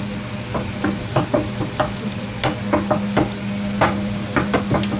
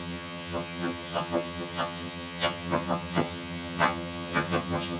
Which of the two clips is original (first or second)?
first